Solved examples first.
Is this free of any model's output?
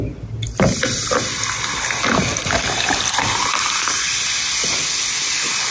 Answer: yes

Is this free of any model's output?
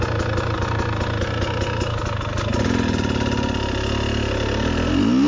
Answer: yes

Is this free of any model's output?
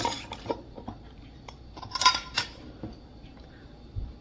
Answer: no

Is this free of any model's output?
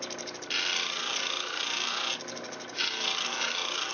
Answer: yes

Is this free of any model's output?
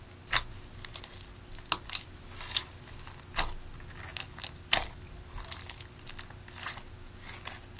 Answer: yes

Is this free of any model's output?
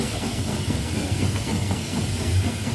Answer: no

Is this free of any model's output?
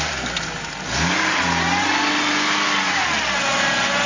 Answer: yes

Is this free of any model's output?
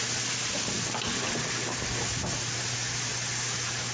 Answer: yes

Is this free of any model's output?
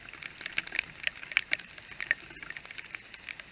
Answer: yes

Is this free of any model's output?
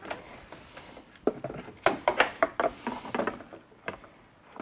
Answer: yes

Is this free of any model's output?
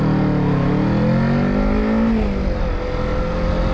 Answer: yes